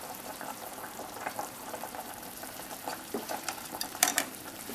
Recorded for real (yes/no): no